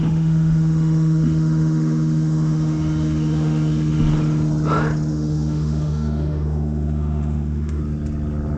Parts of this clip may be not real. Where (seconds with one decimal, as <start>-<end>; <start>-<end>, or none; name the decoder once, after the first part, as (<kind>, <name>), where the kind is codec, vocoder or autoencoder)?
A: 0.0-4.1 (autoencoder, DAC-VAE); 5.1-7.8